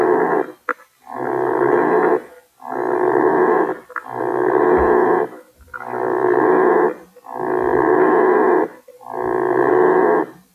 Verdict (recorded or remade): recorded